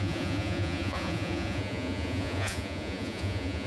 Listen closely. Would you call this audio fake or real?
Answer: fake